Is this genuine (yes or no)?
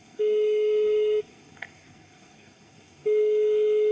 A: no